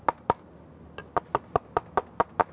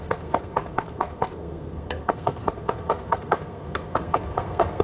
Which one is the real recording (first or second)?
first